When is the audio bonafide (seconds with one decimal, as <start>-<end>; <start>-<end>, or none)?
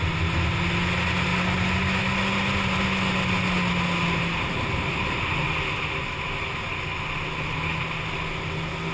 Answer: 0.0-8.9